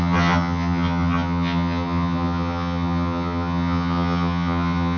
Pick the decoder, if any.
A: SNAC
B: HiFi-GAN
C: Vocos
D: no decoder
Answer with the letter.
B